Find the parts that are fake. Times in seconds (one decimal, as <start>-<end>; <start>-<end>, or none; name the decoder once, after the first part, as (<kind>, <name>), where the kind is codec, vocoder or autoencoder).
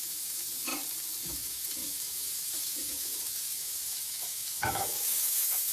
0.0-0.7 (autoencoder, DAC-VAE); 1.2-5.7